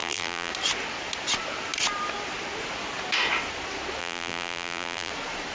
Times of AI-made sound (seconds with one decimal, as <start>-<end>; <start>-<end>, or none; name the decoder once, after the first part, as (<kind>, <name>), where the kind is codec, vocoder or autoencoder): 0.0-0.5 (vocoder, BigVGAN v2); 4.0-5.1